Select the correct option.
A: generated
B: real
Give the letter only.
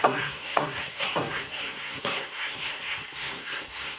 A